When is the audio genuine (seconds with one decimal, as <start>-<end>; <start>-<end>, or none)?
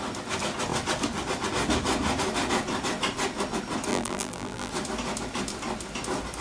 0.0-3.9; 4.7-6.4